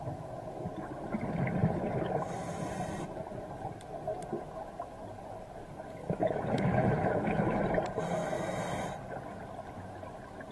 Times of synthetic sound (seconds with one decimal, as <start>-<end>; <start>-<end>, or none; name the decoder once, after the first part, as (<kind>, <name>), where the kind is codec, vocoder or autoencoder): 6.0-7.6 (autoencoder, DAC-VAE)